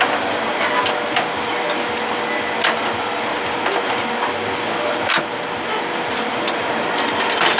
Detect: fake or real real